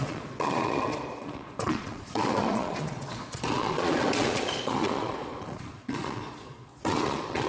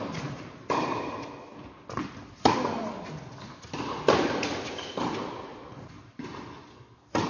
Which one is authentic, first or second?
second